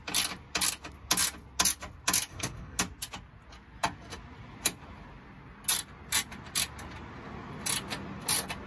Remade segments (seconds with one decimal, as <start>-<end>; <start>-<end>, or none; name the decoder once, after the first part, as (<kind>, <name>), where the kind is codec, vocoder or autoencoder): 2.3-2.8 (codec, SNAC)